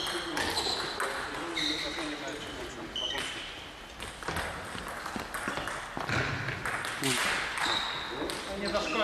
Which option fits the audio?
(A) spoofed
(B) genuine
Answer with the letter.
B